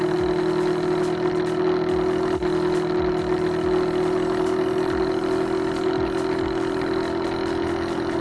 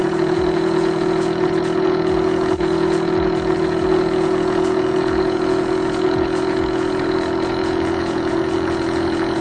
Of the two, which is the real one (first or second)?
first